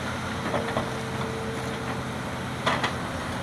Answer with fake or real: real